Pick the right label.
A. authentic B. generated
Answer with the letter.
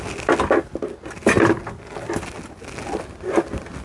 A